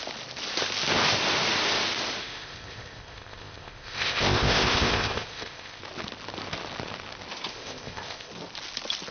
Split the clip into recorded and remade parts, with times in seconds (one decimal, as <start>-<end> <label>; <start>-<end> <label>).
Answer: 0.0-2.2 recorded; 2.2-5.8 remade; 5.8-7.5 recorded; 7.5-8.3 remade; 8.3-9.1 recorded